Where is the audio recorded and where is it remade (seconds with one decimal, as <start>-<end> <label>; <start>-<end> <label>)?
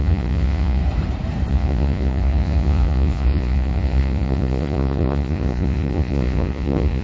0.0-0.8 remade; 0.8-1.5 recorded; 1.5-7.0 remade